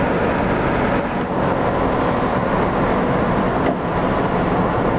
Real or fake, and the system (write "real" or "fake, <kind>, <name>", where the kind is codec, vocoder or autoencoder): real